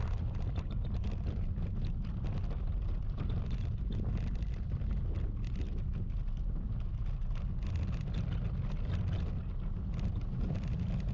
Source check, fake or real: real